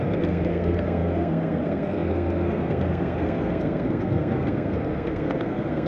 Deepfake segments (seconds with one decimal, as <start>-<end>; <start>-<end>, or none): 0.0-5.9